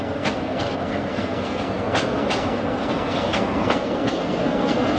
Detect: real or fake fake